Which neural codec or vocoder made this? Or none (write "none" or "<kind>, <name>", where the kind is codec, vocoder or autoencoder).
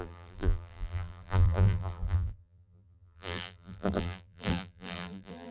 vocoder, BigVGAN v2